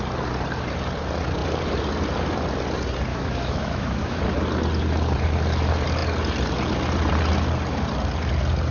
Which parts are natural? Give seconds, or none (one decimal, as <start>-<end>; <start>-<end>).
0.0-3.1; 4.2-8.7